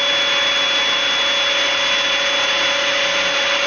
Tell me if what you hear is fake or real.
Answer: real